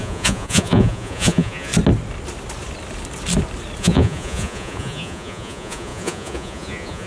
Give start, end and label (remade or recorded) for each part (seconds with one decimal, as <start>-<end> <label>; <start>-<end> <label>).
0.0-1.7 remade; 1.7-3.8 recorded; 3.8-7.1 remade